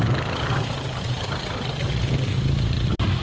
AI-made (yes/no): no